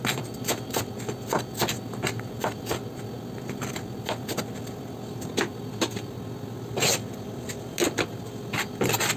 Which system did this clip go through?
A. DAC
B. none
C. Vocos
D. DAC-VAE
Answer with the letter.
B